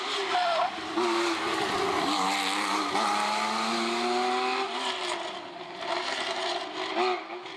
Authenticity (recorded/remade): recorded